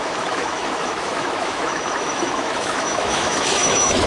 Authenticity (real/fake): fake